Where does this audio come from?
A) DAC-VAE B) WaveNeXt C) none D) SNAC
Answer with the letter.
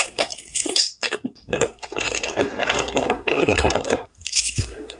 D